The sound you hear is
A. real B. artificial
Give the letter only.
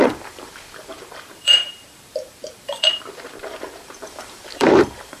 B